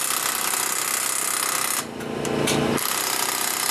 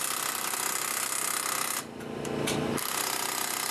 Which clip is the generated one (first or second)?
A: second